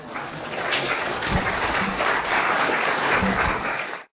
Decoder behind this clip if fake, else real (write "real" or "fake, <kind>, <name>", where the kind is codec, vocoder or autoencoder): fake, codec, DAC